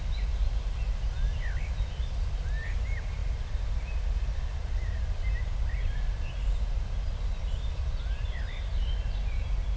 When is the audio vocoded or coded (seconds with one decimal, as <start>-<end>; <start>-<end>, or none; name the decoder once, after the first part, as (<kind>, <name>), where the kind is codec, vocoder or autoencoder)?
none